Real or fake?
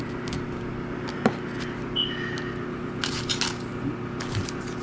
real